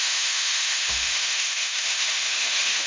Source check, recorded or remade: remade